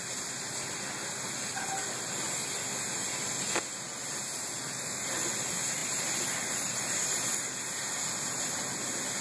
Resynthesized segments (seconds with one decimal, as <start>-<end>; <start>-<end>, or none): none